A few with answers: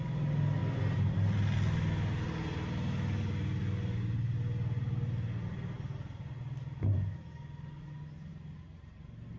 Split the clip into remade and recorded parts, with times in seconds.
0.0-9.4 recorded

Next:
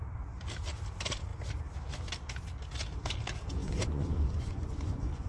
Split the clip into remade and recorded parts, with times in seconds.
0.0-3.6 recorded; 3.6-5.3 remade

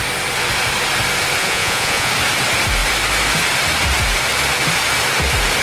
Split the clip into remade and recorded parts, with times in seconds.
0.0-1.4 recorded; 1.4-2.1 remade; 2.1-5.6 recorded

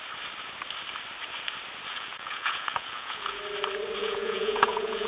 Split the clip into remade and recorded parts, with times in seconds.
0.0-1.9 recorded; 1.9-3.4 remade; 3.4-4.0 recorded; 4.0-5.1 remade